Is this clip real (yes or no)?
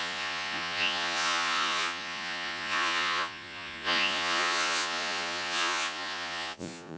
no